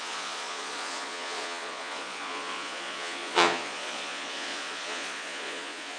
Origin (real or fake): fake